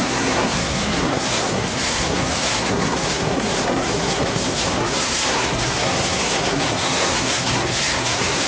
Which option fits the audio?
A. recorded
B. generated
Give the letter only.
B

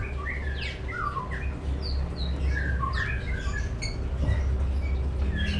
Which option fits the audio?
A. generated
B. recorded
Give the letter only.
B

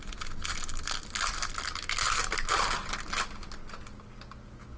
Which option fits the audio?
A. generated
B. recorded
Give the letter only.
B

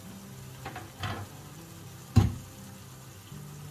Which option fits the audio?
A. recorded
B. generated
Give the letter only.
A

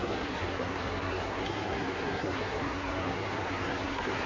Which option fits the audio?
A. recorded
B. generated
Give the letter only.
B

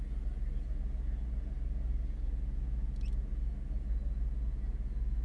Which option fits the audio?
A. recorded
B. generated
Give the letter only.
A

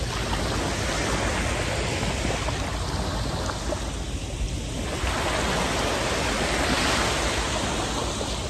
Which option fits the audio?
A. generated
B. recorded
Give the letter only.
B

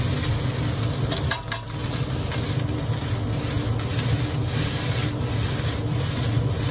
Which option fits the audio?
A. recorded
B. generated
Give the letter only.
A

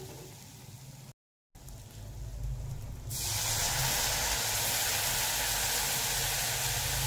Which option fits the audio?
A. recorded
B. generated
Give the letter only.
A